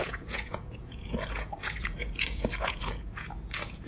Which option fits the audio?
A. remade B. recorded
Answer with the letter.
A